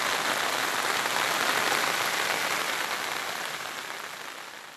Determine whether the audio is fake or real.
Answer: real